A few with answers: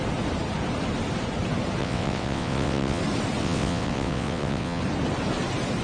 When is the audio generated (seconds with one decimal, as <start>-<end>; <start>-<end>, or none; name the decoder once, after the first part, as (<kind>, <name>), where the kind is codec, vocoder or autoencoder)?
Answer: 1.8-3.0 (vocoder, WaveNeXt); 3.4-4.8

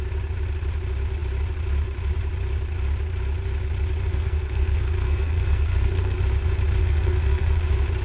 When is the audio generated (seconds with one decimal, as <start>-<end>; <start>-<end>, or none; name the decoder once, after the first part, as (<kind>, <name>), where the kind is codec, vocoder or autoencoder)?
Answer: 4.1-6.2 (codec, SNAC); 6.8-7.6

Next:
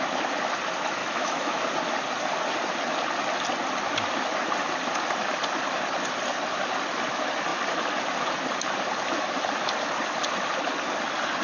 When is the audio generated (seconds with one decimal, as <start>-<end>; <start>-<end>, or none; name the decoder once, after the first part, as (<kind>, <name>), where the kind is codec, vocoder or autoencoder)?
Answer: 1.0-1.6 (autoencoder, DAC-VAE)

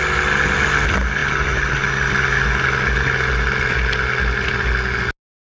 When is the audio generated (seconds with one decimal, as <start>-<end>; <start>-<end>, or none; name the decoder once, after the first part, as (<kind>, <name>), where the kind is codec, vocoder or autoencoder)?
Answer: none

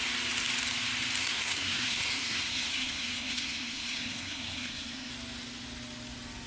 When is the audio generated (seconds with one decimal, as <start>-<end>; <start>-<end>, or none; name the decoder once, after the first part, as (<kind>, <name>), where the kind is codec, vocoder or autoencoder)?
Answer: 1.2-5.1 (codec, SNAC)

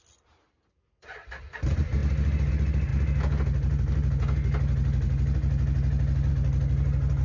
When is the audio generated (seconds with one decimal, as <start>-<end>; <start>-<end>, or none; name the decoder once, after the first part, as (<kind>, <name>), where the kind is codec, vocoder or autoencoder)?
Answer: none

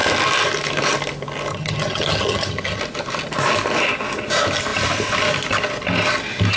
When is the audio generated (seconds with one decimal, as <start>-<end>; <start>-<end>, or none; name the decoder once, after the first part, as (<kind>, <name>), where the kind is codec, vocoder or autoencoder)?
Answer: 1.5-2.8 (vocoder, HiFi-GAN)

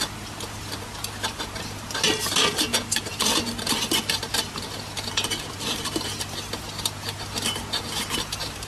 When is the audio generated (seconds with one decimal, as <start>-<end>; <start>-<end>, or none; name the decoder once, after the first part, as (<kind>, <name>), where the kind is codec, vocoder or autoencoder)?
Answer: none